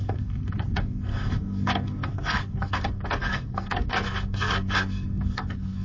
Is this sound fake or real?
fake